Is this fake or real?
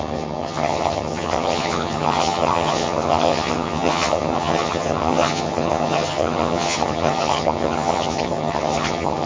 fake